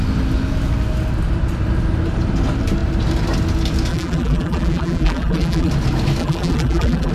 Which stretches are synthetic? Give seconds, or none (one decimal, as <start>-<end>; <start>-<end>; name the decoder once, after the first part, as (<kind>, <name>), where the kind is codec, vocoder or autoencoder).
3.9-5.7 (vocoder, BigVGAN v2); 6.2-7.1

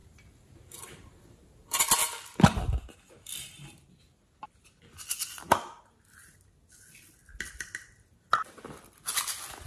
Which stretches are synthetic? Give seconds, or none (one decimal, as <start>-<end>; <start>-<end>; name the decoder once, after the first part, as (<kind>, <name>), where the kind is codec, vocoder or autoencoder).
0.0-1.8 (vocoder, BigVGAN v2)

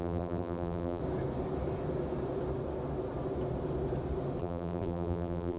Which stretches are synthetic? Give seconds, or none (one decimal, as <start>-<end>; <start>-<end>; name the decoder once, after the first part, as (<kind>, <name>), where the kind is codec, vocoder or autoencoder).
0.0-1.0 (vocoder, BigVGAN v2); 4.4-5.6